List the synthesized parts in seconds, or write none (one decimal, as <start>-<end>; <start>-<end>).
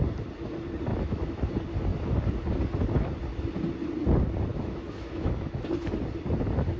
0.9-1.5; 4.5-5.6